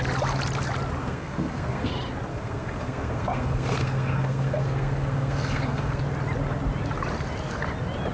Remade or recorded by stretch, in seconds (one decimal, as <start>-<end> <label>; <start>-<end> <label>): 0.0-1.0 recorded; 1.0-1.9 remade; 1.9-2.3 recorded; 2.3-6.0 remade; 6.0-8.1 recorded